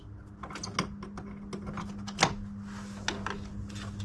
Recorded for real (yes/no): yes